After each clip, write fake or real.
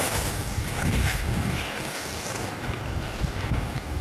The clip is fake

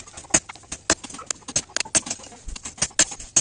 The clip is real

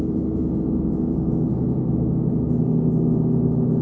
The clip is fake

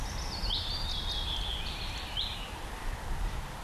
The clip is real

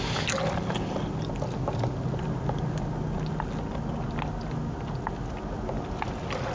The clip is real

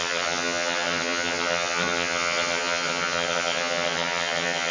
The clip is fake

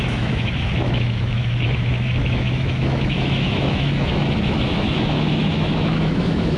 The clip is fake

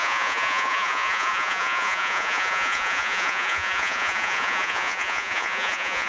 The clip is fake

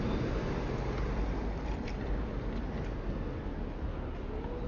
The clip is real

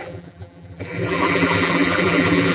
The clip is fake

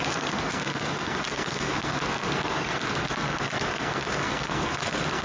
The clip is fake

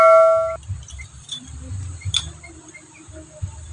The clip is real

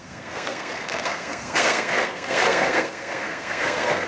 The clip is fake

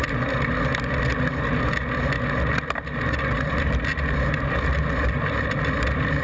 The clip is real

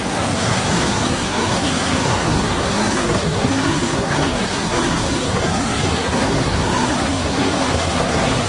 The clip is fake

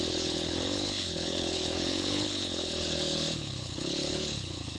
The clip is fake